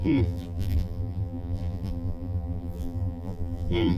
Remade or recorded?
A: remade